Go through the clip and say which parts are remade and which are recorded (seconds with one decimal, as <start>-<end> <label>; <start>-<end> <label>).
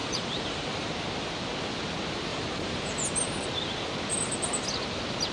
0.0-0.9 remade; 0.9-2.3 recorded; 2.3-3.0 remade; 3.0-5.3 recorded